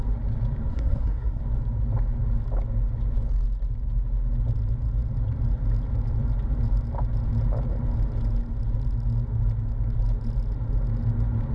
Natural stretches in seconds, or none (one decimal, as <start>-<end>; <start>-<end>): 0.0-0.7; 1.4-11.5